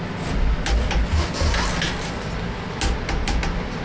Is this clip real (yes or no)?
yes